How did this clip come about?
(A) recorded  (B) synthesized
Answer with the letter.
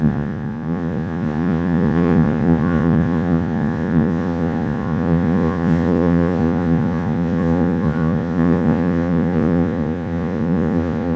B